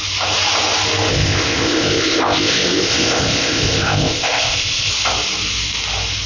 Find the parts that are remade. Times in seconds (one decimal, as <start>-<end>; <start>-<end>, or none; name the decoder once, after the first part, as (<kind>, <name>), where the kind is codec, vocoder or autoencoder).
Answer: 1.1-4.9 (codec, ZipCodec)